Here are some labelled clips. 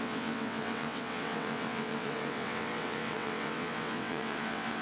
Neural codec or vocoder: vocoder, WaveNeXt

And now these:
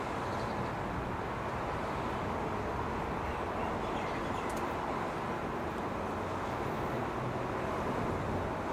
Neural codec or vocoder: none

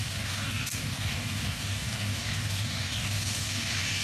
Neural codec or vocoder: codec, DAC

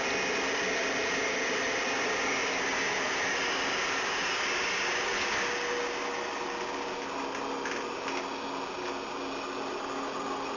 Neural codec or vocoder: none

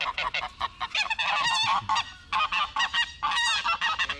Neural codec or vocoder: none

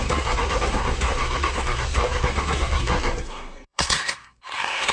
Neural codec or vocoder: codec, SNAC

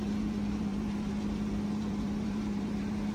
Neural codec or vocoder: vocoder, BigVGAN v2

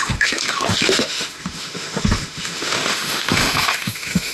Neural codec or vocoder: autoencoder, DAC-VAE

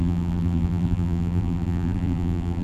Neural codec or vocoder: vocoder, BigVGAN v2